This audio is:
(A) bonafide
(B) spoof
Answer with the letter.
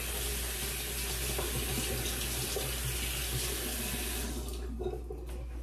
A